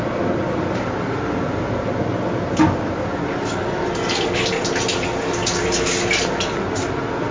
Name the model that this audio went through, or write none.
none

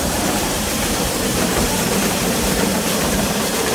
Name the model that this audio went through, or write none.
vocoder, BigVGAN v2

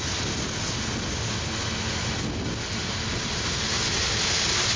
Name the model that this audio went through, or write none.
none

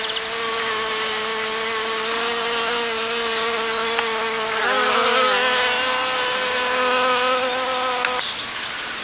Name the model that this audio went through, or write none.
none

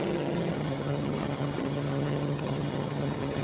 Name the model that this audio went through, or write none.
vocoder, HiFi-GAN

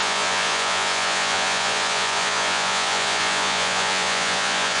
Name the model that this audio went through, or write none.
vocoder, Vocos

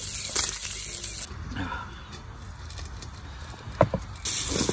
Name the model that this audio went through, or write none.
none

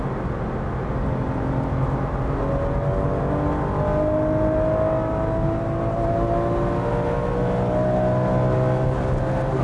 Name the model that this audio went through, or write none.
none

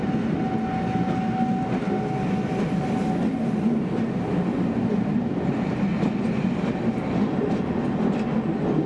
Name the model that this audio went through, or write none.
none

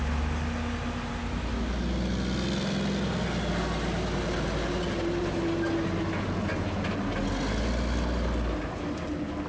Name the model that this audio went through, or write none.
none